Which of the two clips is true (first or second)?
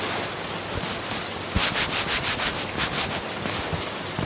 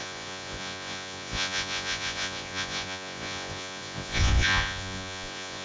first